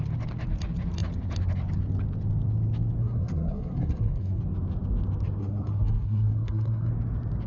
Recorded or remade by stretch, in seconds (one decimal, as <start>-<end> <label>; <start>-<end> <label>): 0.0-3.0 recorded; 3.0-4.4 remade; 4.4-5.4 recorded; 5.4-6.9 remade; 6.9-7.5 recorded